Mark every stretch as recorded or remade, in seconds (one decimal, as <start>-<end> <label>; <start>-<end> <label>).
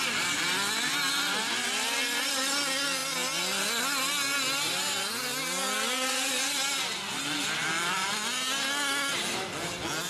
0.0-10.1 recorded